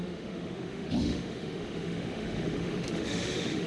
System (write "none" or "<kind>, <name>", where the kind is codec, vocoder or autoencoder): autoencoder, DAC-VAE